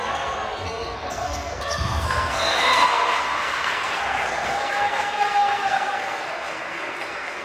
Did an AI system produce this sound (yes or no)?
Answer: yes